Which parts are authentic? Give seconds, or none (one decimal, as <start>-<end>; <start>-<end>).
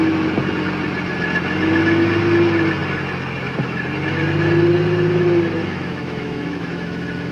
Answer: 0.0-5.6